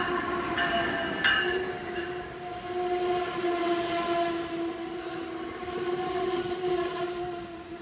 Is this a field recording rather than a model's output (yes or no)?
yes